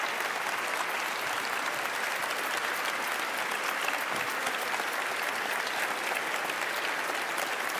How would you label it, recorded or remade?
recorded